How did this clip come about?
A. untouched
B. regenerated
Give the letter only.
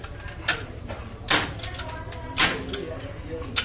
A